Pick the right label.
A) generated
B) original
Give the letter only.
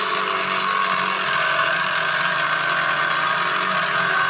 B